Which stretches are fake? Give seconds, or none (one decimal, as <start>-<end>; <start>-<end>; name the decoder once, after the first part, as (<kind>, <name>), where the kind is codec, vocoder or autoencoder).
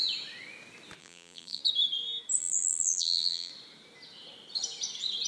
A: 1.0-1.6 (vocoder, BigVGAN v2); 2.4-3.5